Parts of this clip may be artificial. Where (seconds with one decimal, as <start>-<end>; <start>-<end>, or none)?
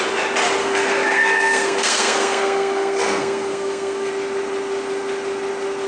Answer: 0.6-4.1